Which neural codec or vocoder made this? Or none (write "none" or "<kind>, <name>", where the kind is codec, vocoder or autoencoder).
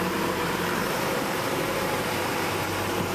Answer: vocoder, BigVGAN v2